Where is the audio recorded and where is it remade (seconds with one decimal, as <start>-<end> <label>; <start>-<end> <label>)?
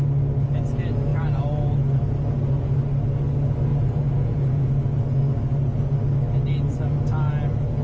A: 0.0-3.7 recorded; 3.7-4.7 remade; 4.7-7.8 recorded